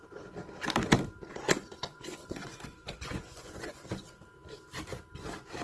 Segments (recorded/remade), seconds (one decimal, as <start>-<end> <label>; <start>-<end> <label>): 0.0-1.3 recorded; 1.3-3.9 remade; 3.9-5.6 recorded